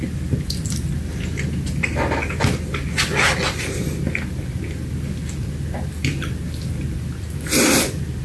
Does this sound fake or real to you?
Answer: real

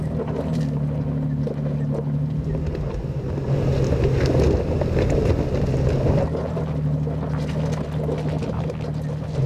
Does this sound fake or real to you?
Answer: real